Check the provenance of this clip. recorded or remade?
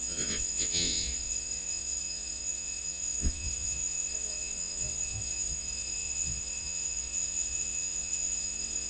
remade